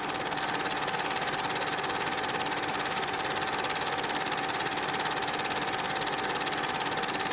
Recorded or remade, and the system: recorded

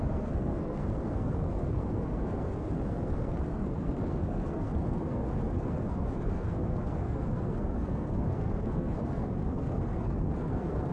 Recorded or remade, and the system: remade, codec, SNAC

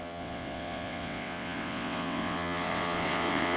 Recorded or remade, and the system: remade, vocoder, WaveNeXt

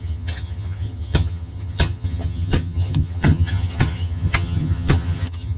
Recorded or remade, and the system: remade, vocoder, HiFi-GAN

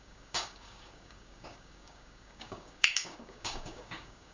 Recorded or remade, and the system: remade, codec, DAC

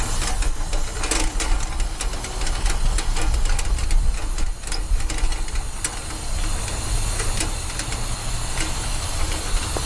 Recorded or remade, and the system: recorded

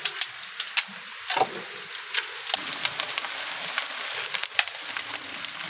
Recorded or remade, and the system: recorded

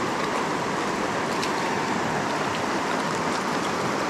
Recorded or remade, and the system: recorded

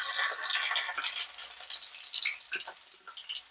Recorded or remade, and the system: recorded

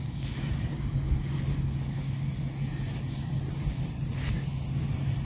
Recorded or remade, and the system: recorded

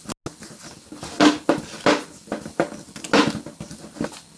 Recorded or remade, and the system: recorded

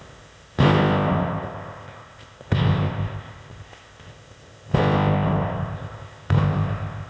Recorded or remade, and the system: remade, codec, ZipCodec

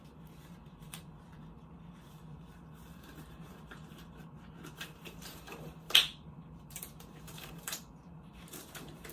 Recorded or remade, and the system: remade, vocoder, BigVGAN v2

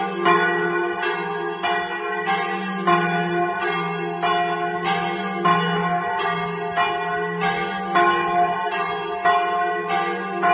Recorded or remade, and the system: recorded